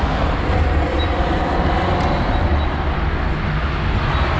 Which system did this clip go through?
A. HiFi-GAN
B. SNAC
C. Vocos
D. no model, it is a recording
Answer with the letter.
D